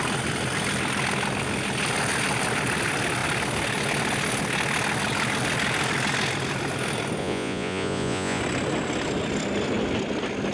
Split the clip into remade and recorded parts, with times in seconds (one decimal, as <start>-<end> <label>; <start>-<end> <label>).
0.0-7.2 recorded; 7.2-8.4 remade; 8.4-10.5 recorded